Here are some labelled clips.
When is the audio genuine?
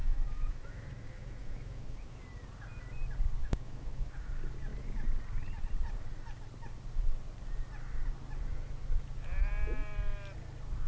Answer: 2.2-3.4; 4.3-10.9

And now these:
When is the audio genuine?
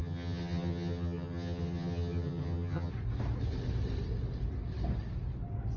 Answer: 2.9-5.8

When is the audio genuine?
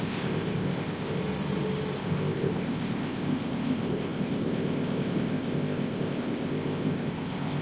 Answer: 1.2-2.0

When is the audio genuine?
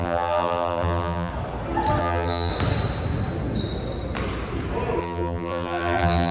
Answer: 1.3-2.0; 2.5-5.0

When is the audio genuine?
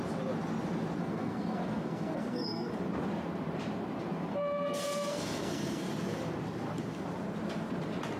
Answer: 0.0-1.0; 2.7-4.3; 5.9-8.2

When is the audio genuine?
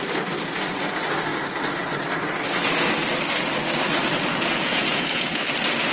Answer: 0.0-4.3; 5.4-5.9